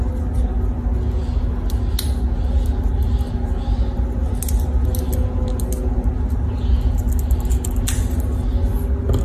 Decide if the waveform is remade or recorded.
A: recorded